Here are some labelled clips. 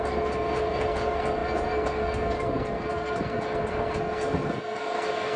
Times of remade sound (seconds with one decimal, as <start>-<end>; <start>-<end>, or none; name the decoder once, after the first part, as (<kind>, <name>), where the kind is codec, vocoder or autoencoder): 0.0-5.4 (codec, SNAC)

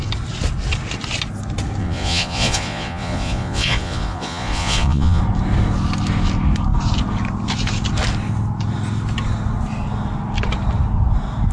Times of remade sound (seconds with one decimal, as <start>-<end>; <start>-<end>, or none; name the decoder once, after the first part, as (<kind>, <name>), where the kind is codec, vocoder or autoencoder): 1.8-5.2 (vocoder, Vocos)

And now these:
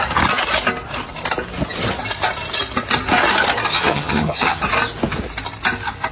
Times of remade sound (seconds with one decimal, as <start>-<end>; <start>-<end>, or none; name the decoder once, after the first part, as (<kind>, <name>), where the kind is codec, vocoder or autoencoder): 3.7-4.6 (vocoder, HiFi-GAN)

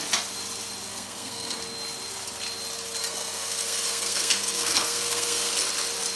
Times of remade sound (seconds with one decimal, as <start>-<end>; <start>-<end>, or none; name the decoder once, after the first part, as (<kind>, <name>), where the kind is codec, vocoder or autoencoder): 0.9-1.6 (codec, SNAC); 3.0-5.5

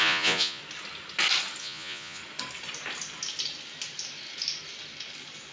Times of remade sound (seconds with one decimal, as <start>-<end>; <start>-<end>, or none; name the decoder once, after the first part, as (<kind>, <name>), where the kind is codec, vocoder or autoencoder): 0.0-0.6 (vocoder, Vocos); 1.6-2.2

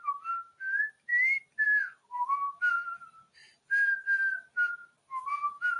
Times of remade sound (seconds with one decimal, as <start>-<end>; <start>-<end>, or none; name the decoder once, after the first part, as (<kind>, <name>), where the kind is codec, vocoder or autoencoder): none

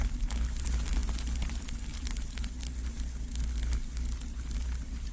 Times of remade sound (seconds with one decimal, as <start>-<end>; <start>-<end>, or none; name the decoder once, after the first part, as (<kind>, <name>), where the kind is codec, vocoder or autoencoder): none